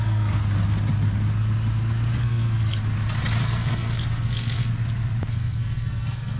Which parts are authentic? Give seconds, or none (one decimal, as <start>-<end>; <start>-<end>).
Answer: 0.4-2.2; 2.8-3.4; 4.7-5.3